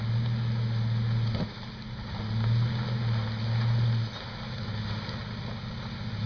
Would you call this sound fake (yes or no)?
no